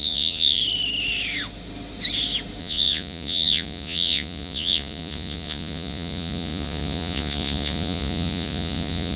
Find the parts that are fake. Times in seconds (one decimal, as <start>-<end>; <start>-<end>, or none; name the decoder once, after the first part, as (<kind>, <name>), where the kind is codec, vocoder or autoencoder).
0.0-0.6 (vocoder, Vocos); 2.6-9.2